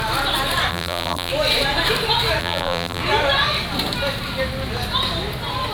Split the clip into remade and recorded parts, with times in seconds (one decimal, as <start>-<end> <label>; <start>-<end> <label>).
0.0-0.7 recorded; 0.7-1.3 remade; 1.3-2.4 recorded; 2.4-3.0 remade; 3.0-5.7 recorded